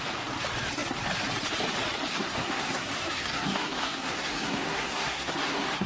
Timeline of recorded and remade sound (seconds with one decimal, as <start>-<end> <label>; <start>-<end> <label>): 0.0-2.1 recorded; 2.1-5.9 remade

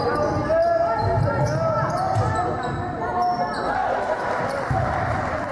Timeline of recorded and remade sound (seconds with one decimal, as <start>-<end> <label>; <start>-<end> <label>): 0.0-5.5 recorded

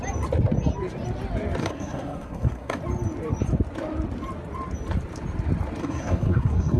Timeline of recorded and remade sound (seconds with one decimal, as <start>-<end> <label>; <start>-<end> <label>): 0.0-1.6 recorded; 1.6-2.8 remade; 2.8-5.8 recorded; 5.8-6.8 remade

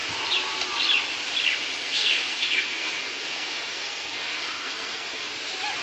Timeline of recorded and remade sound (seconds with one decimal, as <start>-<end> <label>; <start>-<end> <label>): 0.0-1.8 recorded; 1.8-5.3 remade; 5.3-5.8 recorded

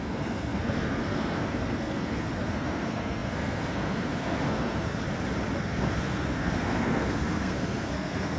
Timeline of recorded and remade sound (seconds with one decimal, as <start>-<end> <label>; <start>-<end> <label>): 0.0-5.0 remade; 5.0-5.6 recorded; 5.6-8.4 remade

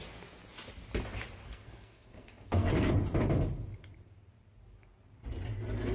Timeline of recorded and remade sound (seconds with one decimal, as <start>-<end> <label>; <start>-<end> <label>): 0.0-1.4 recorded; 1.4-2.9 remade; 2.9-5.9 recorded

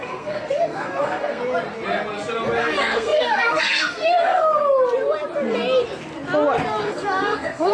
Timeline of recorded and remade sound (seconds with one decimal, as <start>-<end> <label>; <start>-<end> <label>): 0.0-1.4 remade; 1.4-2.6 recorded; 2.6-4.6 remade; 4.6-6.8 recorded; 6.8-7.7 remade